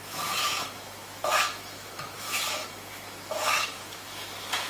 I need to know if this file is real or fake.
fake